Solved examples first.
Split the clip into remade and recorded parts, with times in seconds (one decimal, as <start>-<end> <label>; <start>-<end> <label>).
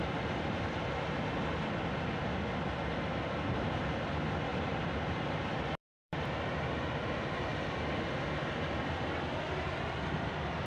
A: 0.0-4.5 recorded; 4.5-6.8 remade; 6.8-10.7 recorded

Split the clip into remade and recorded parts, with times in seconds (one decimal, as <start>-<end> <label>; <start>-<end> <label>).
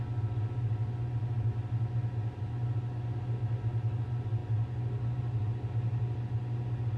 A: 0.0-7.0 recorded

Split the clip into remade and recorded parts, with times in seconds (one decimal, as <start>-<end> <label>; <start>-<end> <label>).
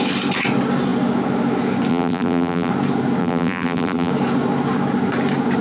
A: 0.0-1.9 recorded; 1.9-2.7 remade; 2.7-3.2 recorded; 3.2-4.1 remade; 4.1-5.6 recorded